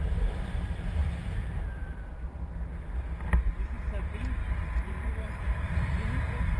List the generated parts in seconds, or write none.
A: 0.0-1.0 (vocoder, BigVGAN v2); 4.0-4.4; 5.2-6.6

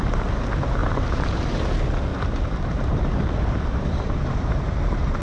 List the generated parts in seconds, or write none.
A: 0.8-1.6 (vocoder, BigVGAN v2); 2.1-5.2

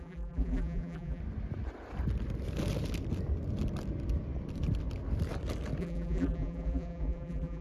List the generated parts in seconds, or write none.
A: 0.0-1.2 (vocoder, BigVGAN v2); 5.8-7.6

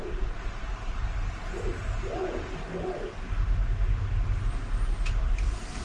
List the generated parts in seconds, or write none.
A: 0.0-2.2 (vocoder, BigVGAN v2); 5.1-5.8

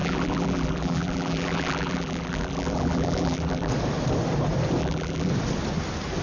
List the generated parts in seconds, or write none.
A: 0.0-3.7 (vocoder, BigVGAN v2); 4.8-5.3